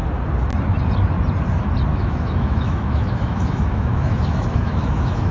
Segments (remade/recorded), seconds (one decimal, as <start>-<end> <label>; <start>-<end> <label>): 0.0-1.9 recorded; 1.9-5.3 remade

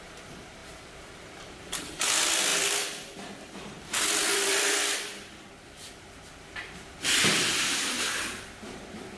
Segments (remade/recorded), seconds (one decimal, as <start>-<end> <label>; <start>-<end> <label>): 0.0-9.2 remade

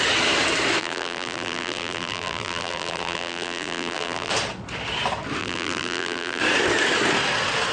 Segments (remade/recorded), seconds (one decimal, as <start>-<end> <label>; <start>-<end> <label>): 0.0-0.8 recorded; 0.8-4.3 remade; 4.3-5.4 recorded; 5.4-6.4 remade; 6.4-7.7 recorded